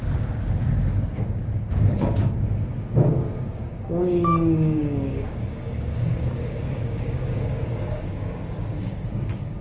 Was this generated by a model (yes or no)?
yes